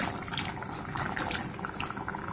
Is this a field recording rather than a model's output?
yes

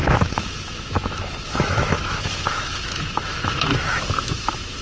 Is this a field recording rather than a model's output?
no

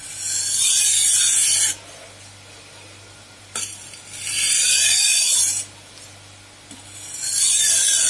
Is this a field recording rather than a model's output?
yes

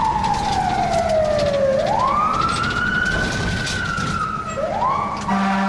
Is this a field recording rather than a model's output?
yes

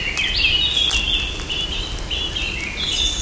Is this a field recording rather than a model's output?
yes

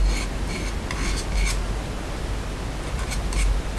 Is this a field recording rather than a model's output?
yes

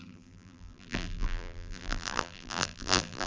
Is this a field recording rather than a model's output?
no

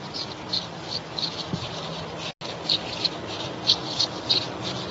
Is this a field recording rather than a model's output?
yes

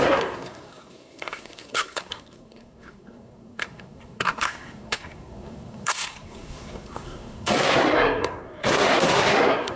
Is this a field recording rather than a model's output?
no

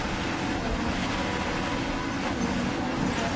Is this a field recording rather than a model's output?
yes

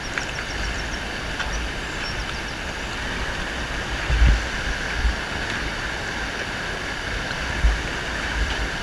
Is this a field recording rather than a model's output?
yes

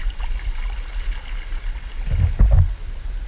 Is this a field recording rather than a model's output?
yes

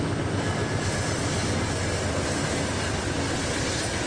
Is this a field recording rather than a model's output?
yes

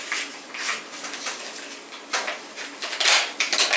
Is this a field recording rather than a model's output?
yes